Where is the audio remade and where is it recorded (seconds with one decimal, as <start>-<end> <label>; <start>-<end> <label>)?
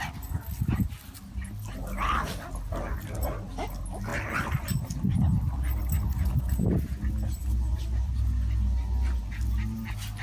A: 0.0-10.2 recorded